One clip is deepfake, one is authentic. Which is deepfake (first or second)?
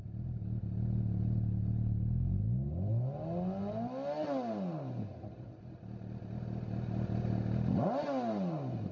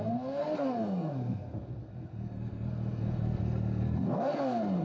second